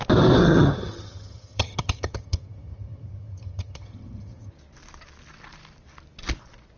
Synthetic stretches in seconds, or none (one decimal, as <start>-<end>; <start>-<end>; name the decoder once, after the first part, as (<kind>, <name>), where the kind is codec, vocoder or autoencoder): 0.4-4.5 (vocoder, HiFi-GAN)